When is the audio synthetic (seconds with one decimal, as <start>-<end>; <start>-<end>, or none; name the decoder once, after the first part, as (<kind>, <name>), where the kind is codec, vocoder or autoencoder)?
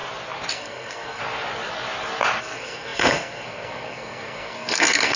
0.5-1.2 (codec, SNAC); 2.4-5.2